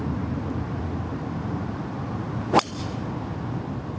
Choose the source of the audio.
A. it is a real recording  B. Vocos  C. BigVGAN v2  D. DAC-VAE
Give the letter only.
A